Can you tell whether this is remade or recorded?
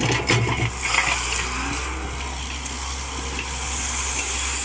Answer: recorded